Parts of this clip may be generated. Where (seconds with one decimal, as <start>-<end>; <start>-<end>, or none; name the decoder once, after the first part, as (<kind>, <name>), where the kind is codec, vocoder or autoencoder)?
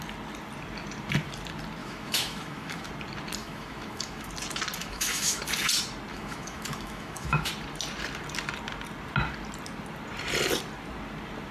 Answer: 1.8-2.9 (autoencoder, DAC-VAE); 3.4-4.3; 4.8-5.4; 6.1-7.5